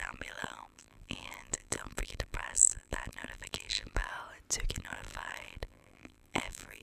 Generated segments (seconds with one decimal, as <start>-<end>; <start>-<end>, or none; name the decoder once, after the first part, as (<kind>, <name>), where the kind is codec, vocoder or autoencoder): 0.0-4.1 (vocoder, BigVGAN v2); 4.7-6.8